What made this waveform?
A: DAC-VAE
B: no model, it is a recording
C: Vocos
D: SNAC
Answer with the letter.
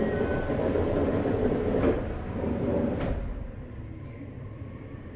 B